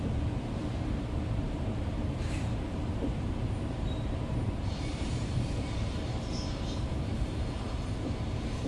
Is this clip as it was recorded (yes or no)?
no